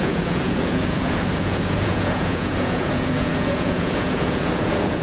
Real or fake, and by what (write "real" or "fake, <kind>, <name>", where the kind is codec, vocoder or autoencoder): fake, vocoder, Vocos